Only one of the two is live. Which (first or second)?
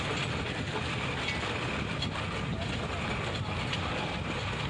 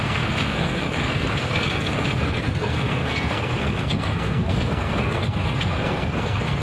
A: first